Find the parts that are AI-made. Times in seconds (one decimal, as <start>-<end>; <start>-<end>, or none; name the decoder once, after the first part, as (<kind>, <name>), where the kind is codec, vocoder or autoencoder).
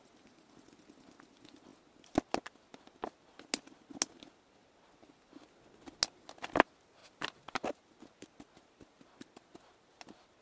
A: none